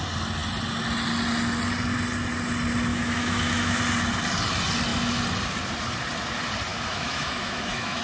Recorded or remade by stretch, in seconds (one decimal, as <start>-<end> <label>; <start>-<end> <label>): 0.0-2.9 recorded; 2.9-3.8 remade; 3.8-6.7 recorded; 6.7-8.0 remade